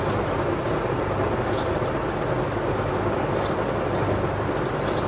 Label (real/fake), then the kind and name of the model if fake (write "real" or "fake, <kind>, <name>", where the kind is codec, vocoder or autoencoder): real